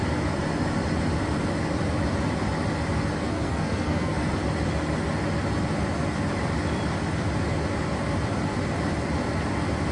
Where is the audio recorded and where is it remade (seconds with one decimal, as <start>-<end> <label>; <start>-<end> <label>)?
0.0-3.2 recorded; 3.2-4.3 remade; 4.3-9.9 recorded